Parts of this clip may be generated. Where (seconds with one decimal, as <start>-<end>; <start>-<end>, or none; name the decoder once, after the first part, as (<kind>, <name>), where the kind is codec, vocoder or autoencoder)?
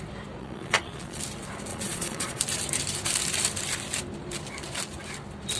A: 0.4-1.2 (vocoder, Vocos); 1.7-2.4